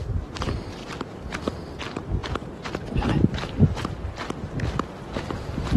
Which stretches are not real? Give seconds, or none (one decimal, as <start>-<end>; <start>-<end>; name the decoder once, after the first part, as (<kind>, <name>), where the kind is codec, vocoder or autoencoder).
none